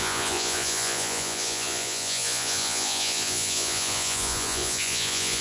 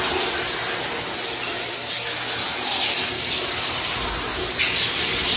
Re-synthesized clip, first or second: first